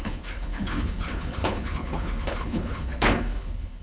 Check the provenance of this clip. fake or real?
fake